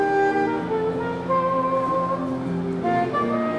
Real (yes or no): yes